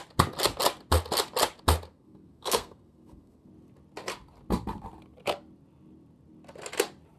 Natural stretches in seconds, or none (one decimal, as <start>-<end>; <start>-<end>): 0.0-1.9; 3.5-7.2